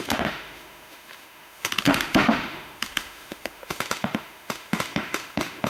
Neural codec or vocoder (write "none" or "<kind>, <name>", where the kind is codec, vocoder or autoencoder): autoencoder, DAC-VAE